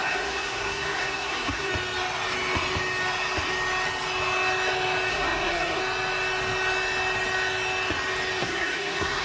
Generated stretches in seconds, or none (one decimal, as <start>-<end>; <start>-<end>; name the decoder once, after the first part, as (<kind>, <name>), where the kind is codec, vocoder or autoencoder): 0.0-1.7 (codec, SNAC); 5.1-5.8; 8.4-9.2

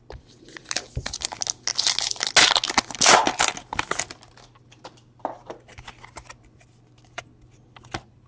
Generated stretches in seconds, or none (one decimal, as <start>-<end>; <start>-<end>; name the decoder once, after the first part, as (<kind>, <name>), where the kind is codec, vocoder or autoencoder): none

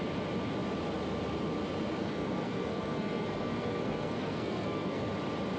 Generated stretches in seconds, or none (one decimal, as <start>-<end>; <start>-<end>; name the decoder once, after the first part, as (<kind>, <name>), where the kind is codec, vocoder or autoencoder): 2.0-5.1 (codec, SNAC)